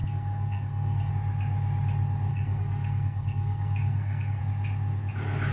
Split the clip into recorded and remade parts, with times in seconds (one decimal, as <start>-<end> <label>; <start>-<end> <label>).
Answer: 0.0-1.1 remade; 1.1-2.3 recorded; 2.3-4.4 remade; 4.4-5.5 recorded